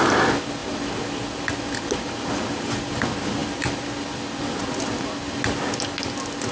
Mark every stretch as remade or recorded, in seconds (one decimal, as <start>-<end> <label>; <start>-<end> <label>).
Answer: 0.0-6.5 recorded